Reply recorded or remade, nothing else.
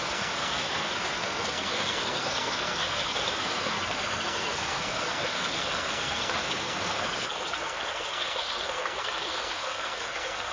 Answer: remade